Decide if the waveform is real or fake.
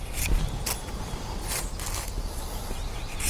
real